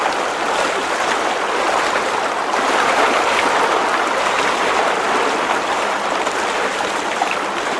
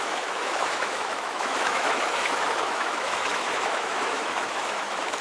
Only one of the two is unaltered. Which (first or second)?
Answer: first